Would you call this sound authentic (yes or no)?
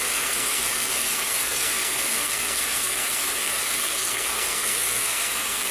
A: no